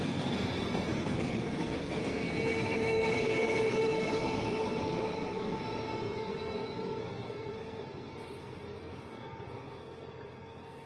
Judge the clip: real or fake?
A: fake